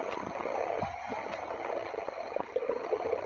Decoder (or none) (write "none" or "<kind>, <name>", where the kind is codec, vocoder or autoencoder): vocoder, HiFi-GAN